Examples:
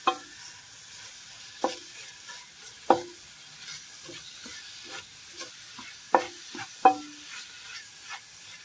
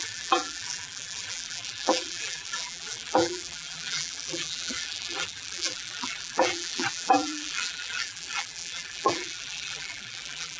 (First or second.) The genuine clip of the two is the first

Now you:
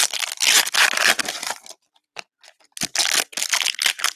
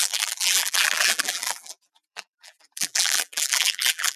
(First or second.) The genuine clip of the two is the first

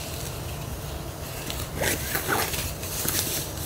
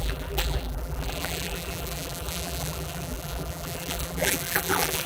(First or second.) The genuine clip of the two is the first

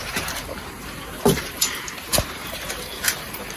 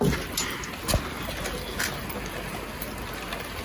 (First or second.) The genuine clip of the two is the second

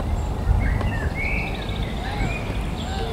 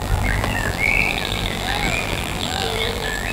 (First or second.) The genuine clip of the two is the first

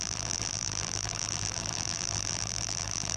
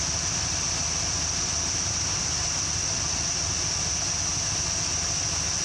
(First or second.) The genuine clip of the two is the second